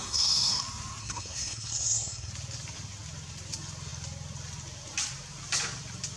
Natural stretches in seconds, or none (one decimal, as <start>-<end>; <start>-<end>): 0.6-1.0; 2.3-6.2